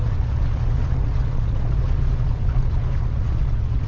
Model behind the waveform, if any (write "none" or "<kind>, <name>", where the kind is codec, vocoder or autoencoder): vocoder, Vocos